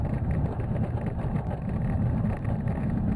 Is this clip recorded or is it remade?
recorded